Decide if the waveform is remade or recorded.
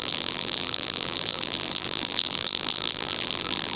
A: remade